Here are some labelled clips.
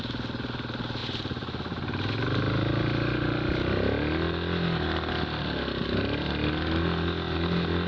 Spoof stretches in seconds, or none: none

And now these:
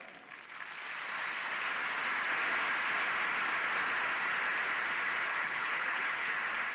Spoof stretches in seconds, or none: 5.3-6.3 (codec, HILCodec)

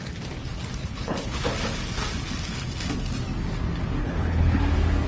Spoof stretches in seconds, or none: 0.8-1.4 (codec, HILCodec); 4.0-4.6

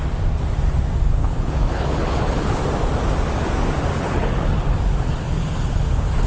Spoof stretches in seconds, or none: 1.2-2.6 (codec, HILCodec); 3.9-6.3

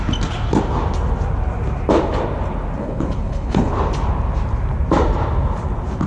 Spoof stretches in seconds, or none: 2.8-3.7 (codec, HILCodec)

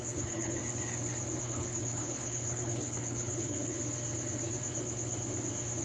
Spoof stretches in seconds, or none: 0.0-0.6 (codec, HILCodec); 1.4-3.8